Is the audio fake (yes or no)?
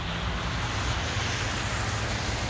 no